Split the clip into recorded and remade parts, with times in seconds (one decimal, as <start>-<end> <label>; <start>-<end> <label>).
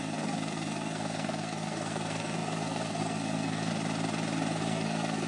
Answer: 0.0-3.7 remade; 3.7-4.6 recorded; 4.6-5.3 remade